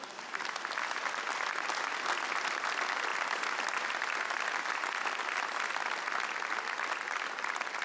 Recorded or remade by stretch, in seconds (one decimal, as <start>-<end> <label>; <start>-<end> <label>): 0.0-7.8 recorded

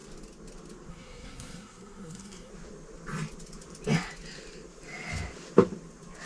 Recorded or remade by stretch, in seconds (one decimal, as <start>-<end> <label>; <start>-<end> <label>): 0.0-0.9 recorded; 0.9-2.5 remade; 2.5-6.3 recorded

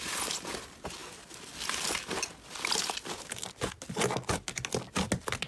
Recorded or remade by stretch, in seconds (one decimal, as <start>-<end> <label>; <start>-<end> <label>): 0.0-5.5 recorded

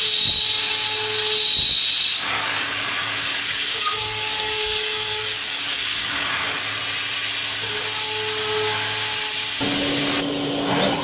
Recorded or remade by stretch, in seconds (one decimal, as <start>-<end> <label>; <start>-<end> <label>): 0.0-2.1 recorded; 2.1-6.6 remade; 6.6-11.0 recorded

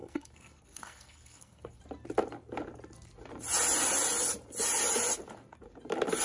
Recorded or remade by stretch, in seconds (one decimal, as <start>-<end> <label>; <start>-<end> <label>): 0.0-1.8 remade; 1.8-6.2 recorded

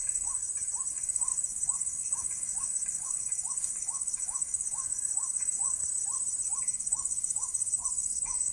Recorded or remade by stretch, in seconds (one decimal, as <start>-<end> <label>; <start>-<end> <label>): 0.0-0.4 remade; 0.4-0.9 recorded; 0.9-5.8 remade; 5.8-6.6 recorded; 6.6-8.5 remade